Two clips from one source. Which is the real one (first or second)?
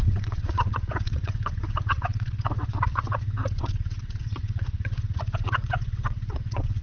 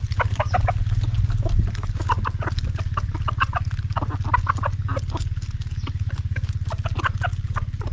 second